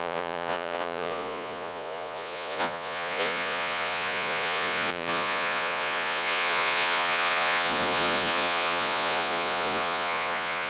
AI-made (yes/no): yes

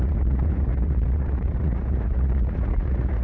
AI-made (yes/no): yes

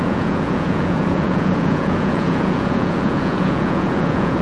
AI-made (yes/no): yes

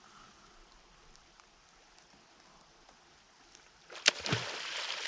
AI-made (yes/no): no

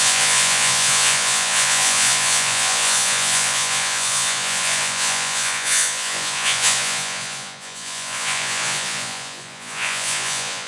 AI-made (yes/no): yes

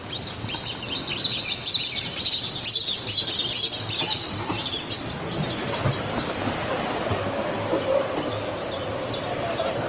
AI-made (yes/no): no